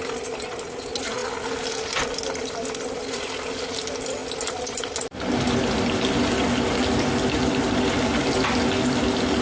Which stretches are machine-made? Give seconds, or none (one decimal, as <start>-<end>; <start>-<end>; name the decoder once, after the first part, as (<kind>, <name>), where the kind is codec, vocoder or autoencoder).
none